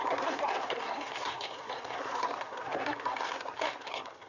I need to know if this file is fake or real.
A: fake